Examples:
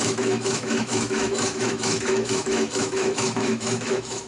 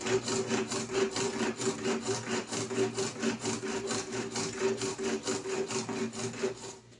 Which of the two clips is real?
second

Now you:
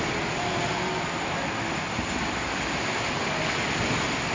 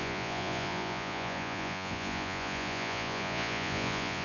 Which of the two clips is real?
first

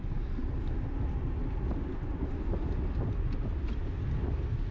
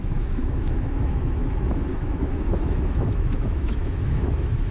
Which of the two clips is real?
first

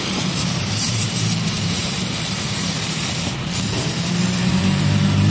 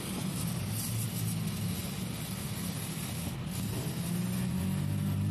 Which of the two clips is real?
second